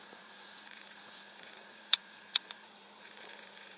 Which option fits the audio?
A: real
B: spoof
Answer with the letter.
B